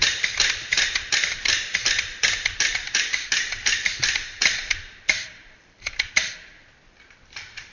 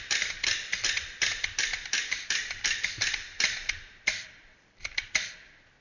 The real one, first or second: second